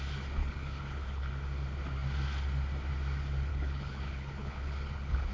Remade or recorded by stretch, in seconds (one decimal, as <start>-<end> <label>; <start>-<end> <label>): 0.0-0.4 recorded; 0.4-1.3 remade; 1.3-3.5 recorded; 3.5-5.3 remade